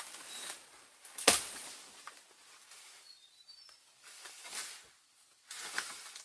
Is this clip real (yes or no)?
yes